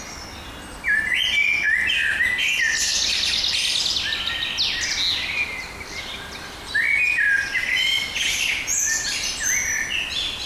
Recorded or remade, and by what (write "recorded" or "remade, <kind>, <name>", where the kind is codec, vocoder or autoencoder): recorded